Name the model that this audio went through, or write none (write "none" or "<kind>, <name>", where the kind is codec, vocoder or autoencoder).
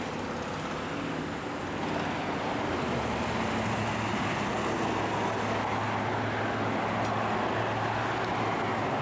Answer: none